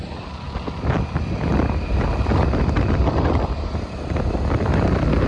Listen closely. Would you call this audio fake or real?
real